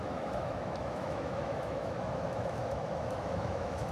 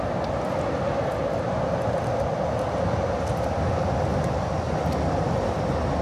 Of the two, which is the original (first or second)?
second